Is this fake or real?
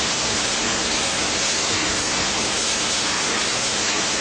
fake